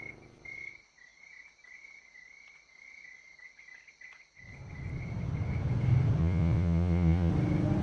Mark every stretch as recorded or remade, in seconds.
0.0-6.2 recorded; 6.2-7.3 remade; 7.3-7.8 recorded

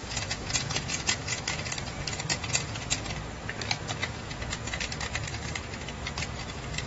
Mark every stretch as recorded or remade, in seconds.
0.0-1.4 remade; 1.4-2.3 recorded; 2.3-3.1 remade; 3.1-4.0 recorded; 4.0-4.8 remade; 4.8-6.9 recorded

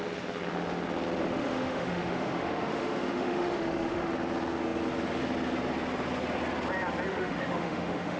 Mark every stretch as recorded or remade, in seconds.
0.0-1.2 recorded; 1.2-4.1 remade; 4.1-7.1 recorded; 7.1-8.2 remade

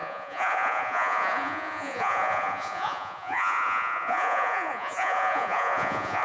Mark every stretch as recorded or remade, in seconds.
0.0-6.2 remade

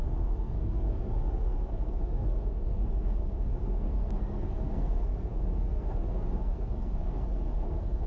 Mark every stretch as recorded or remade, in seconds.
0.0-8.1 remade